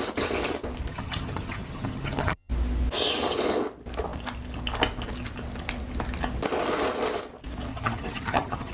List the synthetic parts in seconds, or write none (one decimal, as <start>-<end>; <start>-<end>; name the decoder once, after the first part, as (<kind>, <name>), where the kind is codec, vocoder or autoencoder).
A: 0.9-2.5 (vocoder, HiFi-GAN); 7.7-8.7

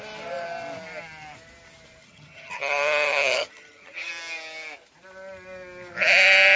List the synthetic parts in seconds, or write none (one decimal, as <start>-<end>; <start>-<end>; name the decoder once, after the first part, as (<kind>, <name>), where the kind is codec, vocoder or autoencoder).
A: 2.0-4.1 (vocoder, HiFi-GAN)

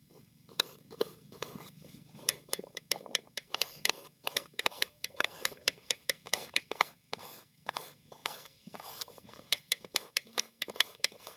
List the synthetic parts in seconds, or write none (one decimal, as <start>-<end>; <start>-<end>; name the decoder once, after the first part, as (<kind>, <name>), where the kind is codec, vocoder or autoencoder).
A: 0.0-11.4 (codec, SNAC)

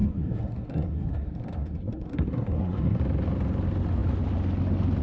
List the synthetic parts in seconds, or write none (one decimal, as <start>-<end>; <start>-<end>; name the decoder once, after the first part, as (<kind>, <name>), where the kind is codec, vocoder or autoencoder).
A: 0.0-3.0 (codec, SNAC)